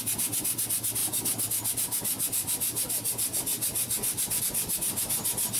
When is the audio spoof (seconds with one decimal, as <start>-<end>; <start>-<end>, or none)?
none

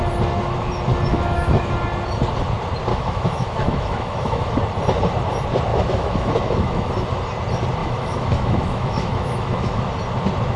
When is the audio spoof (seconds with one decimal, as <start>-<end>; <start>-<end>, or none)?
1.1-1.7; 2.9-4.6; 5.7-6.9; 7.8-9.8

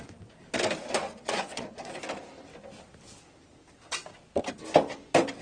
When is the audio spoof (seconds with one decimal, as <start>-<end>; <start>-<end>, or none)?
1.2-2.0

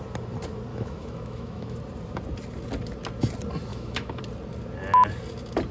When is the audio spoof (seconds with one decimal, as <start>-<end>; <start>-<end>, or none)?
0.7-1.8; 3.7-4.2

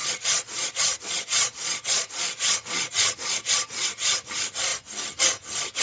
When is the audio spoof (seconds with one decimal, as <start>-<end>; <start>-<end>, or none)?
0.0-3.5